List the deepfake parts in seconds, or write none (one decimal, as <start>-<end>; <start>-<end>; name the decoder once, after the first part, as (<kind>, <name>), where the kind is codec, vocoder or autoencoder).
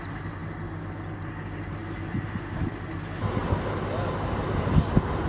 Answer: none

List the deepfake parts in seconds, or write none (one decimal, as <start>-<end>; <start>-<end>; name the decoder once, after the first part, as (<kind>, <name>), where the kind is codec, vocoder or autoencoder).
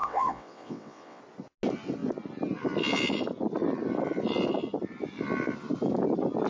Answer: 0.0-1.2 (vocoder, WaveNeXt)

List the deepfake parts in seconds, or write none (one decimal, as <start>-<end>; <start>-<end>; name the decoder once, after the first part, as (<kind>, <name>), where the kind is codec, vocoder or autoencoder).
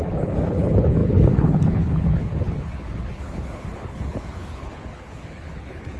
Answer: 0.0-6.0 (codec, HILCodec)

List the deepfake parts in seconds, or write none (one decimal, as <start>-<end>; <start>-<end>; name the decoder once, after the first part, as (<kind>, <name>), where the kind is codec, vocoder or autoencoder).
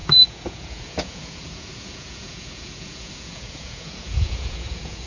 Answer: 0.0-5.1 (vocoder, Vocos)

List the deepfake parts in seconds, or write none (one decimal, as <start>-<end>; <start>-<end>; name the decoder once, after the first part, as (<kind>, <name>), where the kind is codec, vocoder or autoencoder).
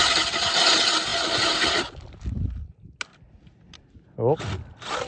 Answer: none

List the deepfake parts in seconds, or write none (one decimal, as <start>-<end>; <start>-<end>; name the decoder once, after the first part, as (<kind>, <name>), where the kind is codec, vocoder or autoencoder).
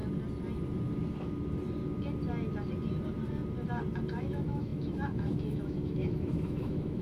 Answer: 4.2-7.0 (autoencoder, DAC-VAE)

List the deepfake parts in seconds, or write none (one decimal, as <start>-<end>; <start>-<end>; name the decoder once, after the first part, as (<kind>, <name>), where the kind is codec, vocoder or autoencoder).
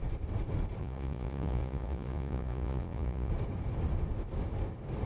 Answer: 0.8-3.3 (vocoder, Vocos)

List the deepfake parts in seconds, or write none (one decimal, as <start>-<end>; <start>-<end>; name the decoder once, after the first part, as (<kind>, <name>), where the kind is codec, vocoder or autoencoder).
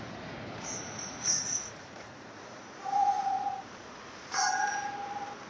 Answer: 0.0-4.4 (vocoder, Vocos)